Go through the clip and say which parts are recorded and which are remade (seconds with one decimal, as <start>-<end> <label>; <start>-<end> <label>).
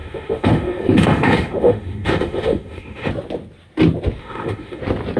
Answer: 0.0-3.1 remade; 3.1-4.2 recorded; 4.2-4.8 remade; 4.8-5.2 recorded